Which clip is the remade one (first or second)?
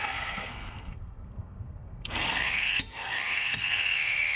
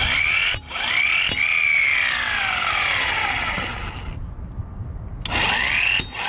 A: first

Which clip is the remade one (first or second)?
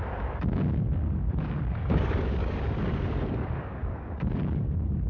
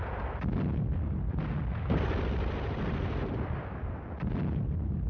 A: first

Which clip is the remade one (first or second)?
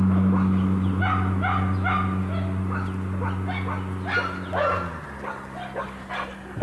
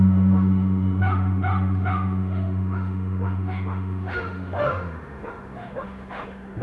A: second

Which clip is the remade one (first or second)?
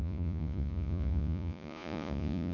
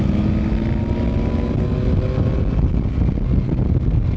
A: first